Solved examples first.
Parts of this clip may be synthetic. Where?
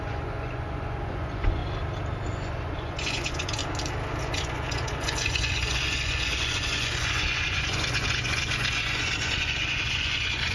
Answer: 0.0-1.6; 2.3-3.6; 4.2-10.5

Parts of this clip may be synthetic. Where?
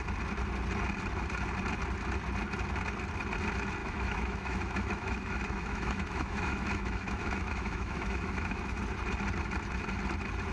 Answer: 3.8-8.8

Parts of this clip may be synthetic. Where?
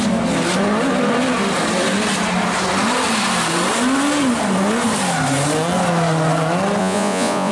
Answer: 6.8-7.5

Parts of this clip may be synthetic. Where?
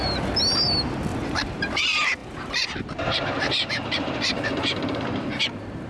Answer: 1.1-1.8; 2.2-5.9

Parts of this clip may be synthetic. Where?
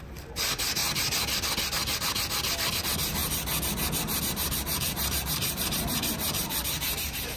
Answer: 0.0-0.8; 2.8-3.2; 4.2-7.4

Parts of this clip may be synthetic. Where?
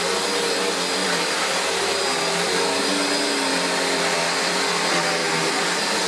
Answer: 1.0-2.8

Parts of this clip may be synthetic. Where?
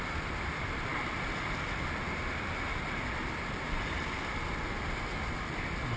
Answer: none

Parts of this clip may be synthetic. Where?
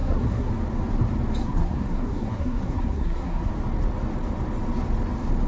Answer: 0.0-0.5; 1.4-3.5